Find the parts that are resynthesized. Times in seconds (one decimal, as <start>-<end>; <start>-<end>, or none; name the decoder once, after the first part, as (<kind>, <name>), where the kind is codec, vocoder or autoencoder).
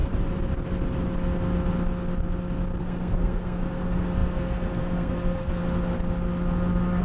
2.8-5.6 (codec, SNAC)